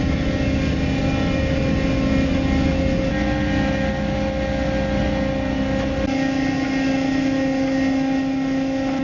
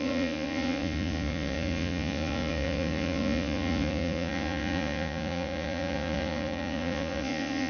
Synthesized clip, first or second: second